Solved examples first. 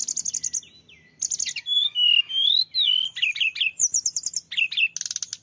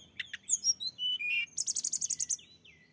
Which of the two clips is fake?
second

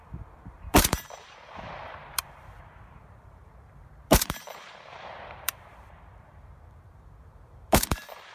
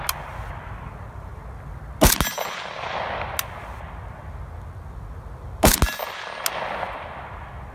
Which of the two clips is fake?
first